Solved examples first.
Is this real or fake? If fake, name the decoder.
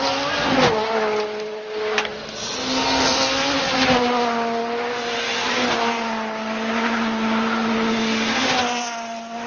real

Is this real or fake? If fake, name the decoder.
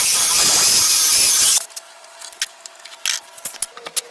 real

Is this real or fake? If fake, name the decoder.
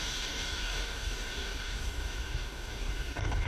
fake, codec, DAC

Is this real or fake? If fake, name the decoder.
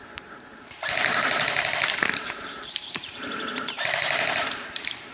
fake, vocoder, BigVGAN v2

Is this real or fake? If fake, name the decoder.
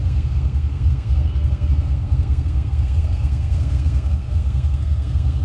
fake, codec, SNAC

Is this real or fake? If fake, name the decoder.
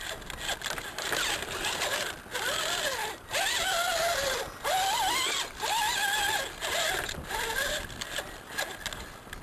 real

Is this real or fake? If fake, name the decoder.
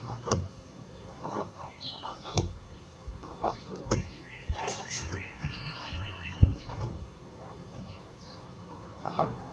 fake, codec, SNAC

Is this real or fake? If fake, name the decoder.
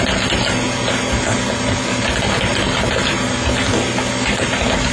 real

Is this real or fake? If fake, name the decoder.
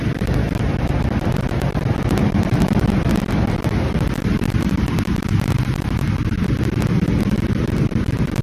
real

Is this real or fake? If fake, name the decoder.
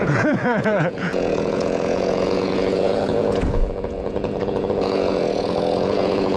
fake, vocoder, Vocos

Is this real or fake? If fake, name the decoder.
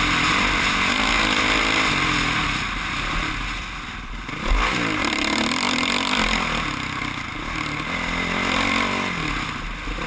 real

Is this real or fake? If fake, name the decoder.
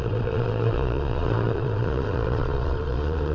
fake, vocoder, Vocos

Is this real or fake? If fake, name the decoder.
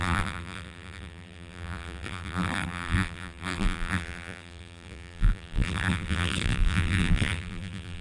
fake, vocoder, BigVGAN v2